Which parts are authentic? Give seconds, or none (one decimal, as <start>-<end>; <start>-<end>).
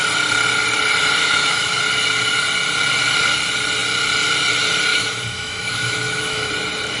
0.0-1.2; 1.8-4.9; 6.5-7.0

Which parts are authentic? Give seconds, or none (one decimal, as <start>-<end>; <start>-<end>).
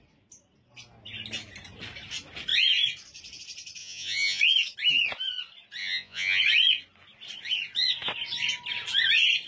0.0-3.8; 4.4-5.8; 6.4-9.5